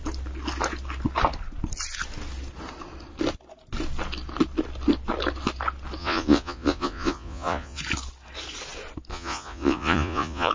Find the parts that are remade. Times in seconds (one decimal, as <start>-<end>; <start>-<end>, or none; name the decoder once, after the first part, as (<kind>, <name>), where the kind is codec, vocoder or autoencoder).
6.0-7.8 (vocoder, Vocos); 9.1-10.5